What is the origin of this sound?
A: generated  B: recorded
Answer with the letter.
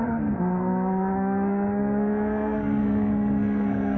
A